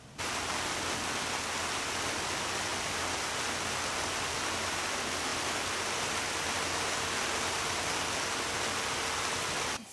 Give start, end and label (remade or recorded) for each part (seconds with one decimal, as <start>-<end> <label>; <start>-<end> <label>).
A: 0.0-9.9 recorded